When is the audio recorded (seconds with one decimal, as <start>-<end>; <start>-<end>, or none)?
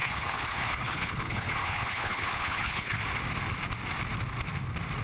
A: 3.0-5.0